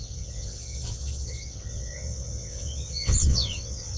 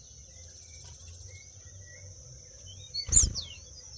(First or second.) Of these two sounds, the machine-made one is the first